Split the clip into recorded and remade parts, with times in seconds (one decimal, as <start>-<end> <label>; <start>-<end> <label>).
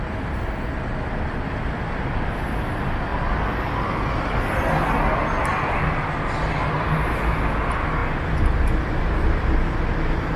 0.0-10.4 recorded